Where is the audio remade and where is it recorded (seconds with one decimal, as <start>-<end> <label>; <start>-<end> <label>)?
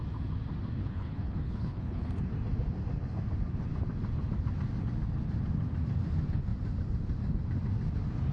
0.0-0.8 recorded; 0.8-2.1 remade; 2.1-8.3 recorded